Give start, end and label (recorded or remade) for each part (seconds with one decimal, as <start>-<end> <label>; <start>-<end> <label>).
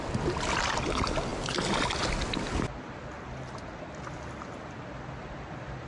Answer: 0.0-5.9 recorded